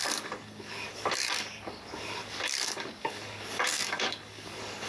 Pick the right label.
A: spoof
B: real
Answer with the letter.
A